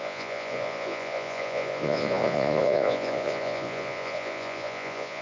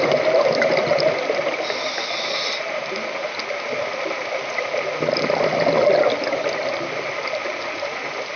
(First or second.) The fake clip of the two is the first